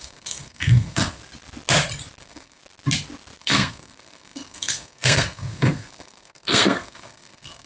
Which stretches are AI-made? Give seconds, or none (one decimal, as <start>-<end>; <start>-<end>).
0.0-1.2; 2.2-2.6; 3.4-7.7